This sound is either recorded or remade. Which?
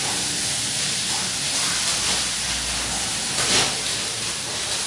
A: recorded